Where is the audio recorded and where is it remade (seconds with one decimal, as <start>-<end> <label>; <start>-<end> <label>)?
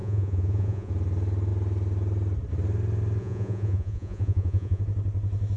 0.0-0.9 remade; 0.9-3.2 recorded; 3.2-4.8 remade; 4.8-5.6 recorded